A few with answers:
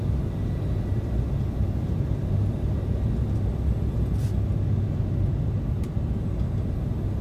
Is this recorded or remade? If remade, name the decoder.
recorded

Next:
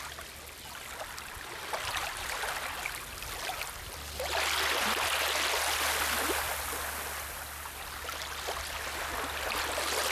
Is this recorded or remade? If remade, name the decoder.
recorded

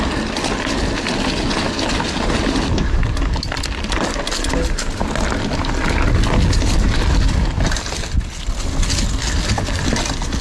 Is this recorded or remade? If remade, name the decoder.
recorded